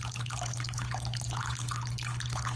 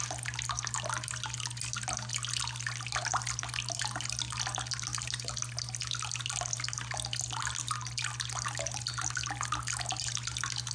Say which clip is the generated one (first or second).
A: first